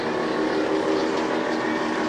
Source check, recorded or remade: recorded